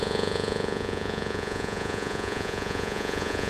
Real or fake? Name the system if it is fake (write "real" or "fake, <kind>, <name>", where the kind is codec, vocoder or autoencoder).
fake, vocoder, Vocos